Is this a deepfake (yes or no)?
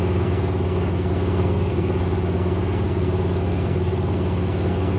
yes